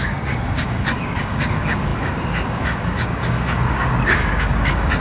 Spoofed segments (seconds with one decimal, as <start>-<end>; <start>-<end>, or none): 0.0-5.0